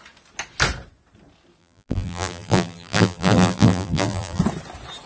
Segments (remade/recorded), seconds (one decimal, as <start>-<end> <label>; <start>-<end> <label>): 0.0-1.6 recorded; 1.6-4.4 remade; 4.4-5.1 recorded